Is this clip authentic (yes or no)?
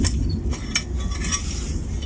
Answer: yes